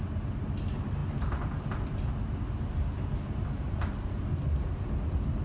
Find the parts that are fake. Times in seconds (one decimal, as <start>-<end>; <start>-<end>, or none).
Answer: none